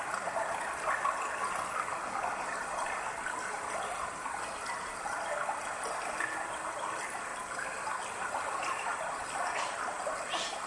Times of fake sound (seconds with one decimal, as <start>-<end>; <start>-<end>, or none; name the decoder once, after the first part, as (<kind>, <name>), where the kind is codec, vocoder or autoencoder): none